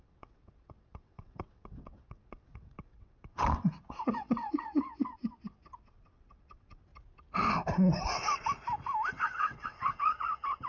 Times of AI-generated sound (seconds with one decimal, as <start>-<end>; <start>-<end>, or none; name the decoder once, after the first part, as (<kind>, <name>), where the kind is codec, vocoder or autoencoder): 0.0-6.9 (vocoder, WaveNeXt); 9.1-10.7